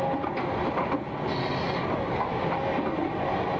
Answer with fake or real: real